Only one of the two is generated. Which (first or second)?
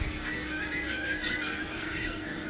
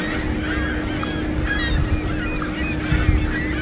first